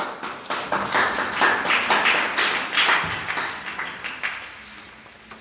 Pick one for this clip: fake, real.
real